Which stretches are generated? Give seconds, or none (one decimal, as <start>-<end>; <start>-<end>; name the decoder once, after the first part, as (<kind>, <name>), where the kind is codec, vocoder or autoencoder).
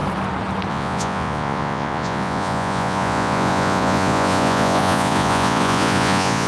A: 0.7-6.5 (vocoder, Vocos)